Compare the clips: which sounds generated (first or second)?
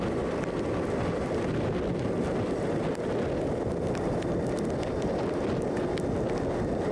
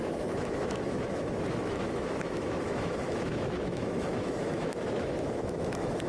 second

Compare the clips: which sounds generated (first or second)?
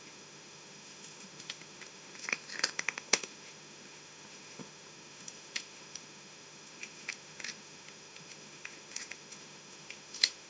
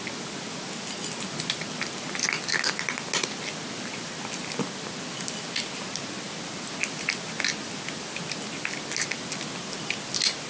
first